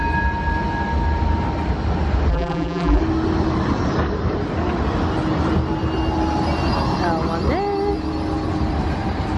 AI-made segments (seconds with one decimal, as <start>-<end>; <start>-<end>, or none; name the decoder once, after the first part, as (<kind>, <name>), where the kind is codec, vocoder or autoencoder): 2.3-3.0 (vocoder, BigVGAN v2)